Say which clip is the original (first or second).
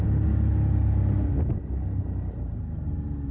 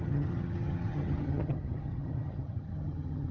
first